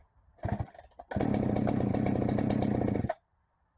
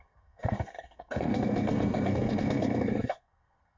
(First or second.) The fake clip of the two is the second